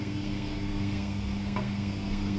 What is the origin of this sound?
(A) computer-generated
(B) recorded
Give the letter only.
A